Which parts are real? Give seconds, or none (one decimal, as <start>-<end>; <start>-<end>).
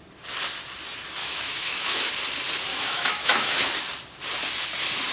0.0-1.2; 2.1-2.7; 3.7-5.1